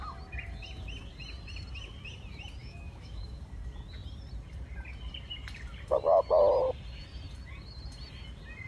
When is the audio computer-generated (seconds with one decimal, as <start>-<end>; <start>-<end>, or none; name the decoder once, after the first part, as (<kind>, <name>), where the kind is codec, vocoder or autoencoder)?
2.6-3.4 (autoencoder, DAC-VAE)